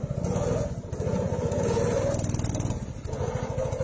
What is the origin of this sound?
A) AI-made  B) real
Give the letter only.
B